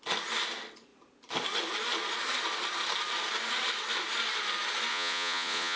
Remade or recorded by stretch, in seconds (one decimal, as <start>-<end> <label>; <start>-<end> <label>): 0.0-4.9 recorded; 4.9-5.8 remade